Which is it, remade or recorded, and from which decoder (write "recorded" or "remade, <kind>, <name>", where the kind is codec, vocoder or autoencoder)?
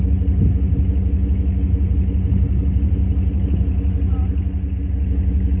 recorded